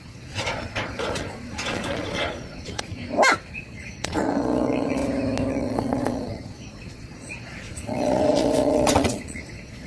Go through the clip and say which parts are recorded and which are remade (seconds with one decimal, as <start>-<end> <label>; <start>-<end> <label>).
0.0-3.0 remade; 3.0-3.5 recorded; 3.5-5.0 remade; 5.0-5.5 recorded; 5.5-9.9 remade